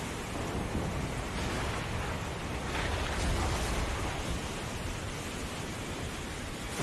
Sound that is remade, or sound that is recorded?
recorded